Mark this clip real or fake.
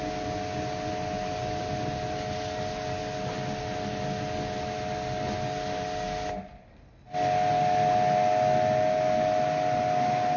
real